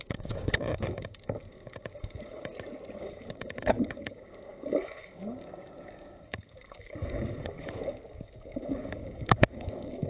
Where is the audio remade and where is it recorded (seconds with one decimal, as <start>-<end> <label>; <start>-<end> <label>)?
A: 0.0-2.5 remade; 2.5-3.0 recorded; 3.0-10.1 remade